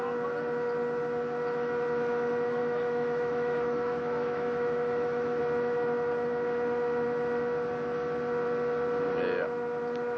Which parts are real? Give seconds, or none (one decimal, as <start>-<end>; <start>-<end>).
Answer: 0.0-2.6; 5.4-10.2